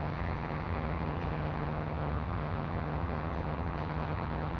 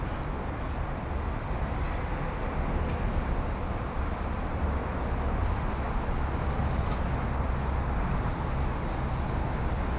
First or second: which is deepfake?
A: first